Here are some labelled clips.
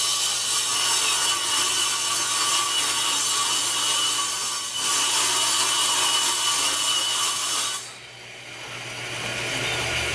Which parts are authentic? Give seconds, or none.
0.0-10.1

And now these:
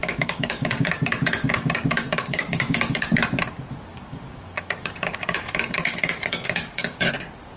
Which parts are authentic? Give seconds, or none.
3.2-3.9; 7.1-7.6

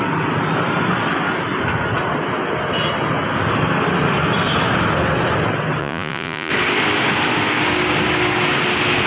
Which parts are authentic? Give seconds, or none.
0.0-5.8; 6.5-9.1